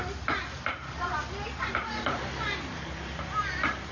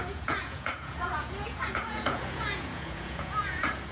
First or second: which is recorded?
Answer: first